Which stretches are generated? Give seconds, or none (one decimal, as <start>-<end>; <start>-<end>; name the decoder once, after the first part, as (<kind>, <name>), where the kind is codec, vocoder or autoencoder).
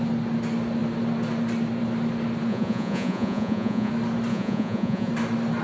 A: 2.5-3.9 (vocoder, Vocos); 4.3-5.1